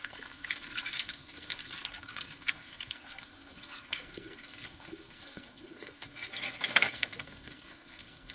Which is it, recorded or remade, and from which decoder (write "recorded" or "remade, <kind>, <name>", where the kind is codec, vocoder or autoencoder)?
remade, codec, SNAC